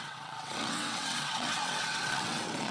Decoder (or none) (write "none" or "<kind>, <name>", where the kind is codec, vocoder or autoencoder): vocoder, WaveNeXt